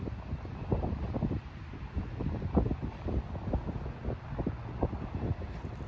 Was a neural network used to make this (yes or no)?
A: no